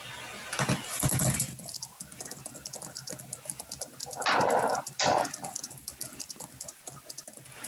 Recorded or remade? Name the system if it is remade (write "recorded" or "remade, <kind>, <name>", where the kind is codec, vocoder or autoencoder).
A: recorded